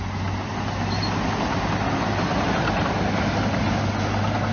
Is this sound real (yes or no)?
yes